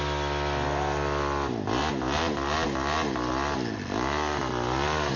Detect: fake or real real